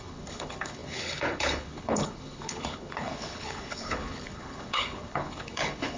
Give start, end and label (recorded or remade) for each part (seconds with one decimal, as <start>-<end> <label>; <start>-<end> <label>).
0.0-6.0 remade